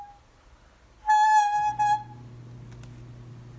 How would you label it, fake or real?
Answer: real